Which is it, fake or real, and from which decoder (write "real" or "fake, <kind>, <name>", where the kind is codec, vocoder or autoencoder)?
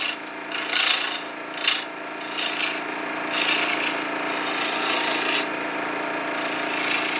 real